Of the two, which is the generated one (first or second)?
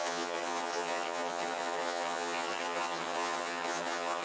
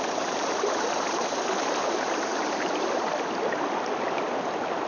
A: first